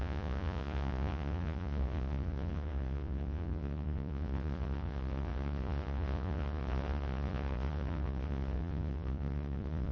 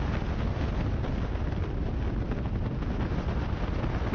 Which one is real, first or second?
second